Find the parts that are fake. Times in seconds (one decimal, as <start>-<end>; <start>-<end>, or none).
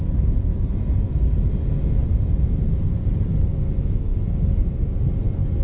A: 0.5-1.6; 2.0-3.6